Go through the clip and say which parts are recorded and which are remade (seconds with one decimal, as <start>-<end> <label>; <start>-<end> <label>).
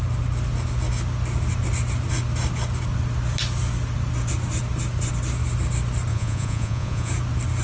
0.0-6.1 recorded; 6.1-7.1 remade; 7.1-7.6 recorded